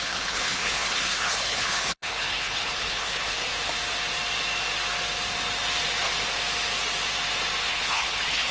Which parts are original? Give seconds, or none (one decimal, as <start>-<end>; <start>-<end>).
3.5-7.7